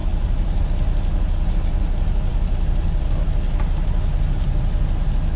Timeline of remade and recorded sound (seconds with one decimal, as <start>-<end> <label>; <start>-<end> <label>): 0.0-0.6 remade; 0.6-2.3 recorded; 2.3-3.2 remade; 3.2-5.4 recorded